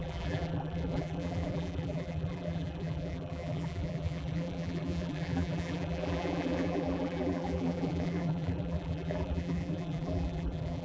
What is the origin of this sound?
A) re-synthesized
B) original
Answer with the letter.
A